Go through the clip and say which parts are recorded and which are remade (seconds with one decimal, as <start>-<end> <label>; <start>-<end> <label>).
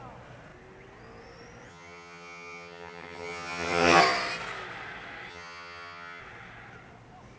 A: 0.0-1.7 recorded; 1.7-4.0 remade; 4.0-5.3 recorded; 5.3-6.2 remade; 6.2-7.4 recorded